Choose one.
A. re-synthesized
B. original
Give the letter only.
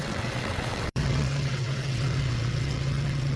A